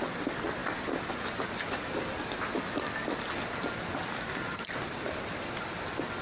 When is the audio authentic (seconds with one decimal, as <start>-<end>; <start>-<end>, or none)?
0.6-4.3